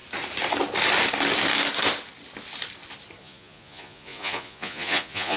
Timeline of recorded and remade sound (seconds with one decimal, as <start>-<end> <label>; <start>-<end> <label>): 0.0-3.2 recorded; 3.2-5.4 remade